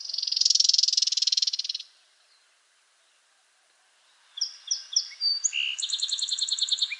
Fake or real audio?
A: real